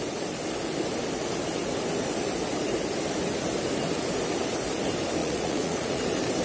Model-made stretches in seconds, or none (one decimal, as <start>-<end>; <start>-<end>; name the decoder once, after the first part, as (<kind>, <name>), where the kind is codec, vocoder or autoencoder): 5.2-6.0 (vocoder, Vocos)